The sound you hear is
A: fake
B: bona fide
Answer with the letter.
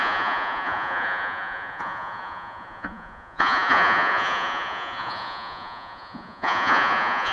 A